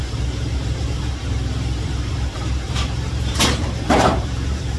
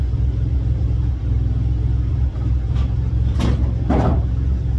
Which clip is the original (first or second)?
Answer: second